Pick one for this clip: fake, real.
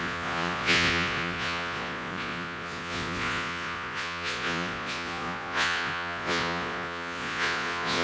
fake